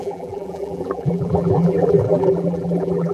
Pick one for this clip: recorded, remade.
remade